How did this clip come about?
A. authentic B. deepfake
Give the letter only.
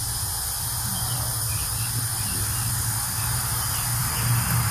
A